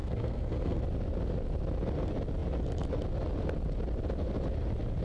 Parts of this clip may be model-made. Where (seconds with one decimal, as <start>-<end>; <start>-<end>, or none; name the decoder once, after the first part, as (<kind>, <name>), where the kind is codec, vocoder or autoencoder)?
0.0-0.8 (codec, SNAC)